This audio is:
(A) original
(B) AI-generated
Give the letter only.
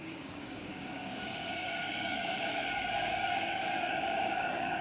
B